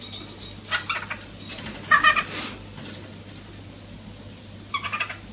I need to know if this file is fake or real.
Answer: real